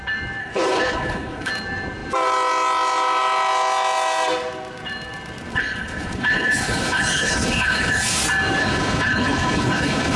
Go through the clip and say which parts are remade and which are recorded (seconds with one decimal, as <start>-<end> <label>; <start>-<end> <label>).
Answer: 0.0-0.4 recorded; 0.4-1.5 remade; 1.5-5.5 recorded; 5.5-8.2 remade; 8.2-8.6 recorded; 8.6-10.2 remade